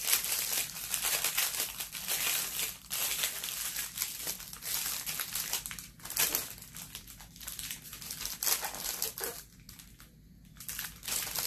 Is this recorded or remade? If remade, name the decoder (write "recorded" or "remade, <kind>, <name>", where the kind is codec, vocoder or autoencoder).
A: recorded